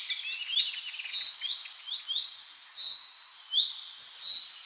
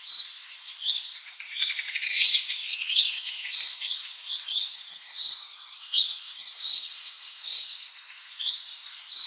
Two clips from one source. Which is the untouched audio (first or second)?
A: first